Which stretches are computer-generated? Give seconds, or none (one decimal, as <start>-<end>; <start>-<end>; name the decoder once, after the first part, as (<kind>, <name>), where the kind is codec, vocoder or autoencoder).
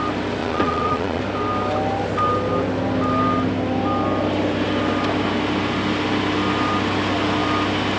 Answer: 0.4-1.2 (vocoder, Vocos)